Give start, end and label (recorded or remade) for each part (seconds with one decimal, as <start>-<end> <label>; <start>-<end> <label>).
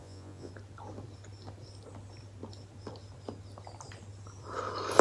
0.0-0.5 remade; 0.5-5.0 recorded